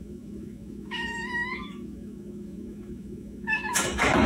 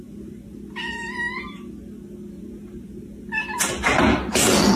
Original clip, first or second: second